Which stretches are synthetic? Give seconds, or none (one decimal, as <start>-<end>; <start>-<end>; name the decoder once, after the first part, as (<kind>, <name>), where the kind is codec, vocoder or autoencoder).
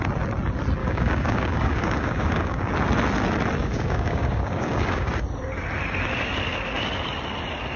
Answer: 0.8-2.7 (codec, DAC); 3.6-5.1